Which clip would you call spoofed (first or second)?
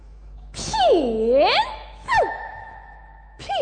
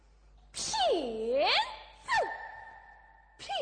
first